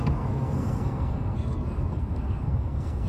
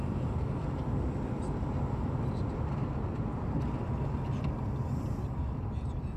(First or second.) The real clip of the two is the second